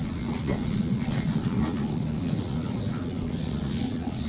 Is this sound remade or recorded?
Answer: remade